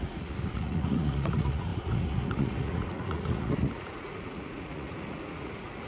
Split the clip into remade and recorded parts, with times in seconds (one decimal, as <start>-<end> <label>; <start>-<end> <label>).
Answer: 0.0-5.9 remade